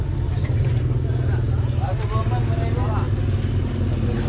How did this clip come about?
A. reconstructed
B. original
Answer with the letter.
B